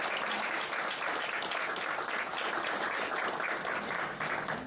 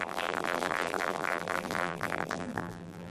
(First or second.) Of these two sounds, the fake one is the second